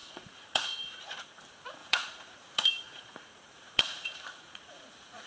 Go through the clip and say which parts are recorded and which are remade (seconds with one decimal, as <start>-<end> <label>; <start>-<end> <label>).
0.0-1.4 remade; 1.4-1.8 recorded; 1.8-5.3 remade